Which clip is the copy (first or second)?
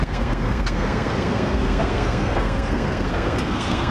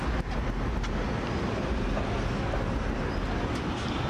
first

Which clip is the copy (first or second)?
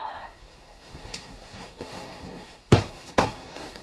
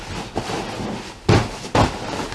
first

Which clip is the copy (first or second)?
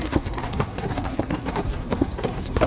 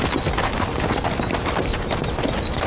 first